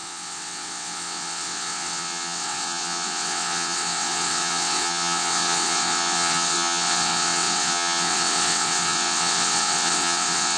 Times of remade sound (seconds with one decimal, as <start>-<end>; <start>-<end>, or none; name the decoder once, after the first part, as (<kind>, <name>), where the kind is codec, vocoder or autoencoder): 0.0-10.6 (vocoder, WaveNeXt)